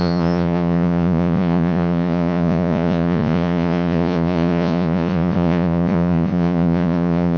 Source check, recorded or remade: remade